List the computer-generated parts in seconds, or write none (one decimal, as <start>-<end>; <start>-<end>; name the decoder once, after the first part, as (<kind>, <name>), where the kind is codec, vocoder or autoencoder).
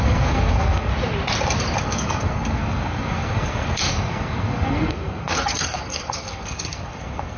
0.0-0.9 (codec, SNAC); 1.8-7.4